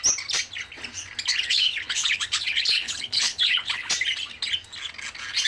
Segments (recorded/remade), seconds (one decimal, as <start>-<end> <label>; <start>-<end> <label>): 0.0-1.3 recorded; 1.3-3.9 remade; 3.9-5.5 recorded